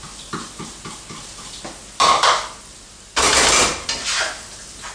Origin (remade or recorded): recorded